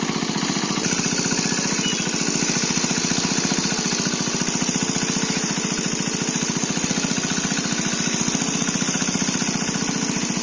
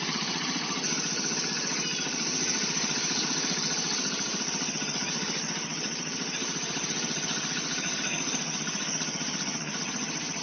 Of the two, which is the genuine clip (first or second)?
first